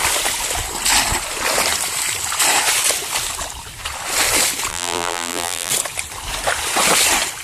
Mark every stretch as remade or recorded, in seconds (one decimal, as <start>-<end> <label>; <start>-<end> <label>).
0.0-4.7 recorded; 4.7-5.7 remade; 5.7-7.4 recorded